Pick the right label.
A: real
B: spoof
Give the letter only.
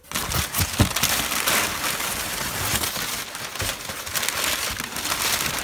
A